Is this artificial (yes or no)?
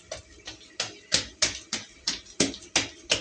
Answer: no